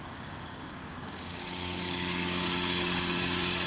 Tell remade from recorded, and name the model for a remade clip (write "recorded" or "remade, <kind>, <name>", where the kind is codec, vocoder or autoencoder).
remade, codec, DAC